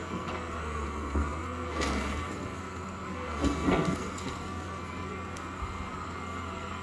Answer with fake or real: fake